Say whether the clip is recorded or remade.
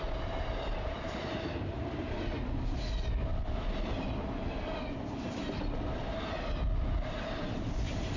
recorded